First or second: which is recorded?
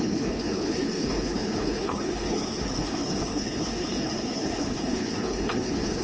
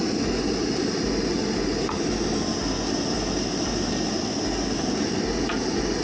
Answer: second